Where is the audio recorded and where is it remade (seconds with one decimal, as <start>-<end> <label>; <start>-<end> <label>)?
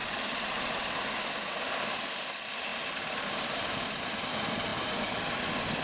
0.0-2.7 recorded; 2.7-4.0 remade; 4.0-5.8 recorded